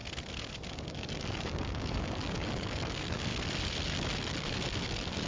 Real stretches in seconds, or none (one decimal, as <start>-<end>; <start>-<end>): 0.0-0.7; 3.3-4.2